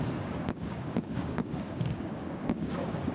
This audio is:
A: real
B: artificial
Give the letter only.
B